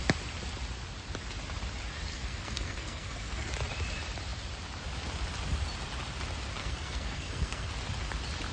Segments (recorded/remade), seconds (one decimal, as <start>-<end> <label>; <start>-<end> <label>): 0.0-2.1 recorded; 2.1-3.5 remade; 3.5-6.6 recorded; 6.6-7.7 remade; 7.7-8.5 recorded